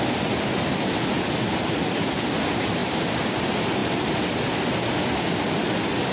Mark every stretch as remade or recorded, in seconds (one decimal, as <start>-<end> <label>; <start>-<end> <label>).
0.0-2.8 recorded; 2.8-3.4 remade; 3.4-6.1 recorded